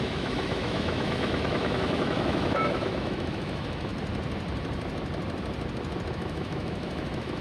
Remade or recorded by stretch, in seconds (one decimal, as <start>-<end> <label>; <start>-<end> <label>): 0.0-3.9 remade; 3.9-6.1 recorded; 6.1-7.4 remade